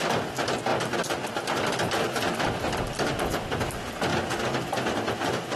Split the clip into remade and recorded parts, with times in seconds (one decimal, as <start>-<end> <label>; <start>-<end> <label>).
0.0-0.7 remade; 0.7-3.1 recorded; 3.1-4.1 remade; 4.1-4.9 recorded; 4.9-5.6 remade